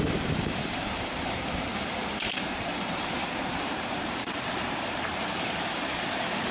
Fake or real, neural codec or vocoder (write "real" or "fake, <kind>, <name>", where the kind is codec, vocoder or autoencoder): fake, vocoder, BigVGAN v2